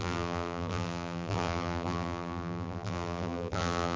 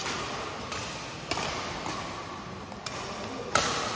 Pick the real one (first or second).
second